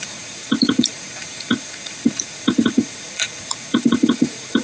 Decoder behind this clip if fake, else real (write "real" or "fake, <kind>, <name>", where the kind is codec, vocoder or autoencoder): fake, vocoder, Vocos